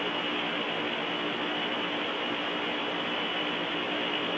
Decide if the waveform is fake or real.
real